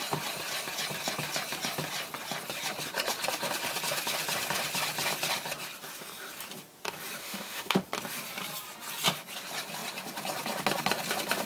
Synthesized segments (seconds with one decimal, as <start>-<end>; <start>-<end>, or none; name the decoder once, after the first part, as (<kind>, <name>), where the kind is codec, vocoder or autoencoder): 7.2-7.8 (autoencoder, DAC-VAE)